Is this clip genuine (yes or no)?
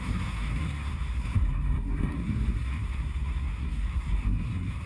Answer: no